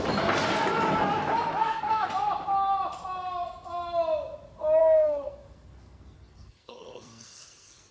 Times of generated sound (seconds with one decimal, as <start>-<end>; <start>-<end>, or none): 1.6-2.1; 4.8-7.9